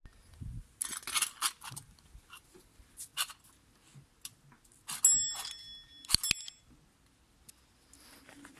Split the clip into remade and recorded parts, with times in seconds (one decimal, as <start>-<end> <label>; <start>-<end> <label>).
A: 0.0-8.6 recorded